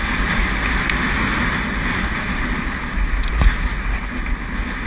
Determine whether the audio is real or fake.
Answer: real